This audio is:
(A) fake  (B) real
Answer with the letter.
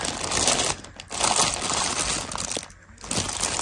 B